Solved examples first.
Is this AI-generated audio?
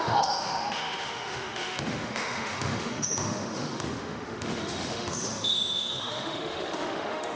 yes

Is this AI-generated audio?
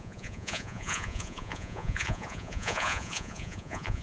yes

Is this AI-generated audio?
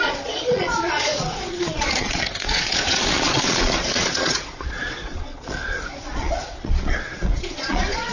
yes